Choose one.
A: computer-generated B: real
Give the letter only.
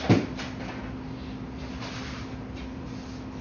B